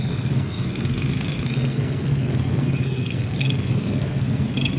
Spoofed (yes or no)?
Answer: yes